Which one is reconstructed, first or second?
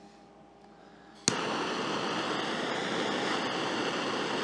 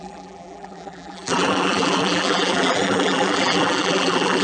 second